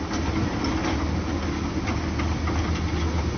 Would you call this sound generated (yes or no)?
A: no